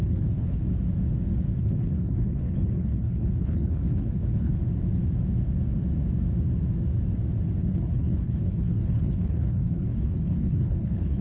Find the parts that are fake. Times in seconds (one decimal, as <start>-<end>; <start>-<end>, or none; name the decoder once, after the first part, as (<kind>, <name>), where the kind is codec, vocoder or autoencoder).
0.0-0.6 (codec, HILCodec); 1.6-4.6; 7.6-11.2